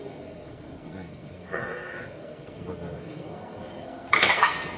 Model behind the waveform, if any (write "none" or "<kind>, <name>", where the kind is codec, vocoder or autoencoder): codec, SNAC